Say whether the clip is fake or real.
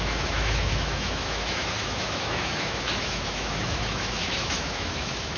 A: fake